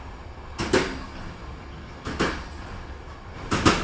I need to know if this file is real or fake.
real